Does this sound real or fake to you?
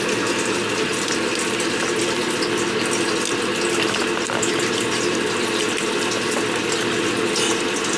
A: real